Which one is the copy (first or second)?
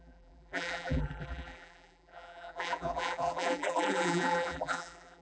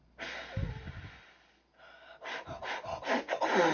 first